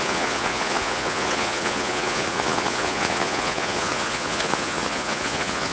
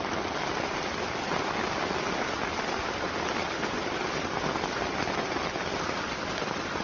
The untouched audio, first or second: second